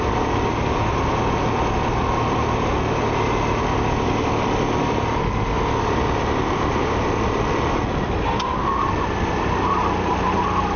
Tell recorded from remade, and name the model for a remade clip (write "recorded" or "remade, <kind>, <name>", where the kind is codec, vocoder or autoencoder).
recorded